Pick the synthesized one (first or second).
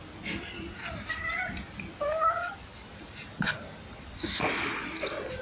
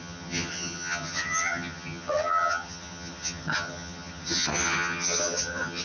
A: second